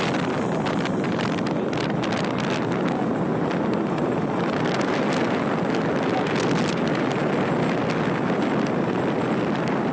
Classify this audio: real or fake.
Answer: real